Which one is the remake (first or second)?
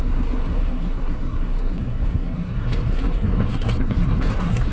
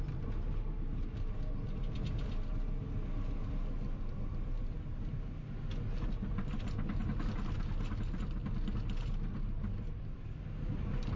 first